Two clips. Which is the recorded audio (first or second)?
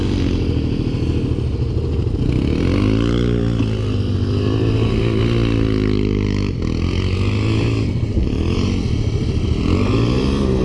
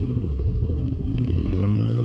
first